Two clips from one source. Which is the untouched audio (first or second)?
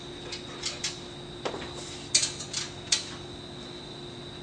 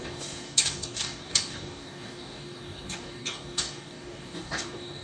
first